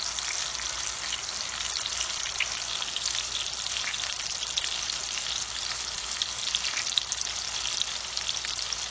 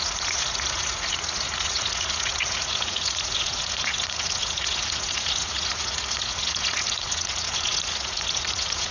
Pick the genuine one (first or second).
first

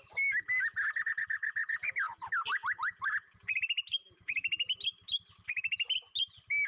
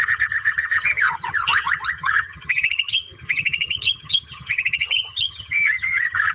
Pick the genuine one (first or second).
first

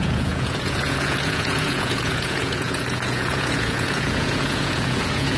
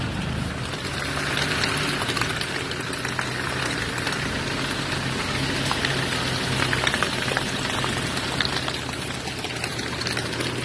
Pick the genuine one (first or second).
second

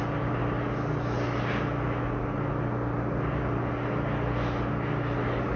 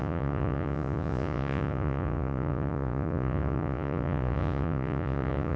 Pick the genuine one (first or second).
first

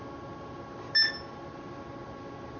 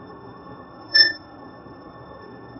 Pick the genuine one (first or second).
first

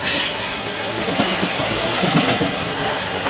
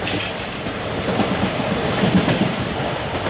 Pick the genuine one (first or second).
second